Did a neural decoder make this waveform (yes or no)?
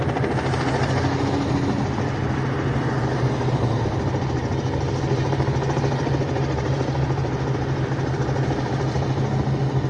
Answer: no